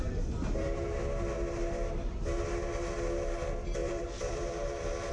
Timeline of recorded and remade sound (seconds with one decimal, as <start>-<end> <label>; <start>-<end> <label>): 0.0-3.8 recorded; 3.8-5.1 remade